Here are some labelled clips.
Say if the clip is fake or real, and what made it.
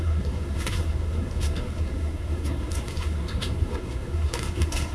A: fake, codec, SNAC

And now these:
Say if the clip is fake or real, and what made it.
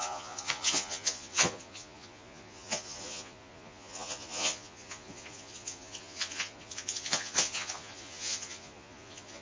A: fake, vocoder, Vocos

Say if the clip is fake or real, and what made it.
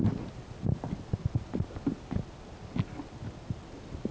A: real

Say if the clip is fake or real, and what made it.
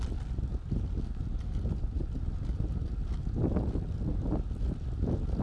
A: real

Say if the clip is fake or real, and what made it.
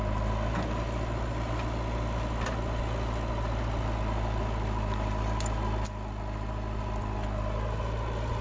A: real